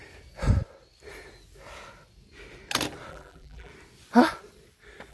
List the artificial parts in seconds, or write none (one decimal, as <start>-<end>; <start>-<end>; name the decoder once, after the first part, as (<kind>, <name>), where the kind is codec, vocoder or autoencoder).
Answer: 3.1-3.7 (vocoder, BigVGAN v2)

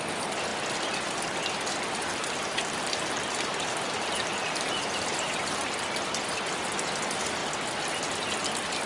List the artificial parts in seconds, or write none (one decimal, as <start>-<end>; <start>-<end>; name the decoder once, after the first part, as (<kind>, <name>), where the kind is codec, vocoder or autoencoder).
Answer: 2.1-5.4 (vocoder, BigVGAN v2)

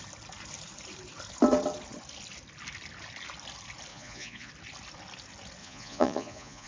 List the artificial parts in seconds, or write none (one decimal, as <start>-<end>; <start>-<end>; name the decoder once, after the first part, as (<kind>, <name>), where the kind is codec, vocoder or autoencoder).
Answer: 3.9-4.5 (vocoder, Vocos); 5.6-6.7

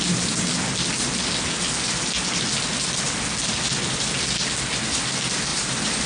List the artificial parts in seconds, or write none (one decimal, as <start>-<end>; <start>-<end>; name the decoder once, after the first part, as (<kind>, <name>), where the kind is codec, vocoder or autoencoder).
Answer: 5.5-6.1 (vocoder, BigVGAN v2)

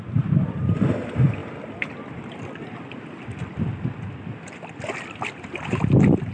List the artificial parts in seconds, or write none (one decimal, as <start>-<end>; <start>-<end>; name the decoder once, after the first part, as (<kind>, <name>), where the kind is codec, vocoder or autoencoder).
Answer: none

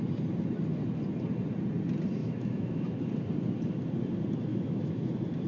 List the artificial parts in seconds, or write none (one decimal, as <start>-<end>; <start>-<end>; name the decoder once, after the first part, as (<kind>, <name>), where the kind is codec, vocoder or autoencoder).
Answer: 2.2-3.0 (autoencoder, DAC-VAE); 4.5-5.1